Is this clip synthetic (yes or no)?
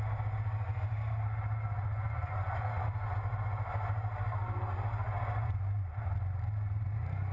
no